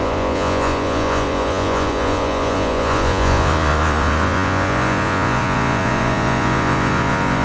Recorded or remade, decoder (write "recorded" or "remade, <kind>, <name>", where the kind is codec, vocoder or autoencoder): remade, vocoder, Vocos